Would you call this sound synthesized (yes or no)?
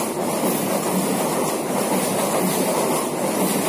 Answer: no